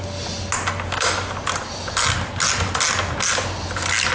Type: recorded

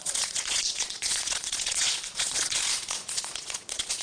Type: remade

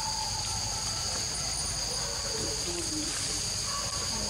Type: recorded